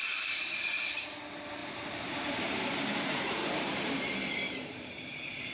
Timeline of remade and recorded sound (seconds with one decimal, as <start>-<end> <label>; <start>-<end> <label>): 0.0-0.6 remade; 0.6-1.6 recorded; 1.6-4.9 remade; 4.9-5.5 recorded